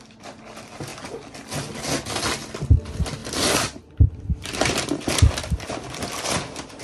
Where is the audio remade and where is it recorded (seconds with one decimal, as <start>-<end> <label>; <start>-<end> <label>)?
0.0-3.2 recorded; 3.2-6.8 remade